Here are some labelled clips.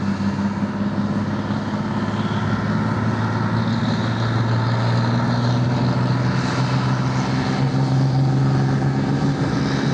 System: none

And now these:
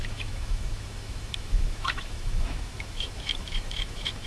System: autoencoder, DAC-VAE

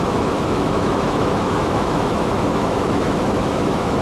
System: autoencoder, DAC-VAE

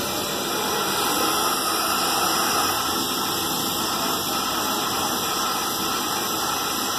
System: none